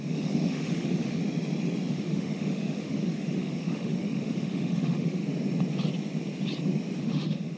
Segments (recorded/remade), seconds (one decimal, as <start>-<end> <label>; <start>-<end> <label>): 0.0-1.2 remade; 1.2-1.9 recorded; 1.9-5.2 remade; 5.2-7.0 recorded; 7.0-7.6 remade